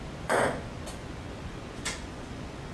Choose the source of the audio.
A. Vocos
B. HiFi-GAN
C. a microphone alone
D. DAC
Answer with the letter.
A